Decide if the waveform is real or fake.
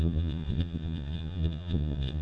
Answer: fake